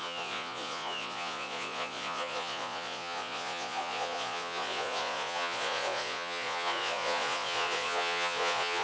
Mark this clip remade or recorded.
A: remade